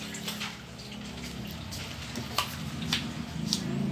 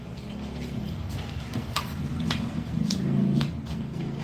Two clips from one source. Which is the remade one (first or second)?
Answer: second